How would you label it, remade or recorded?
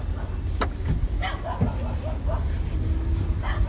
recorded